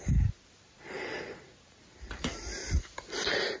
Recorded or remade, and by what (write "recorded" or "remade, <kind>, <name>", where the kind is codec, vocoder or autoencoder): recorded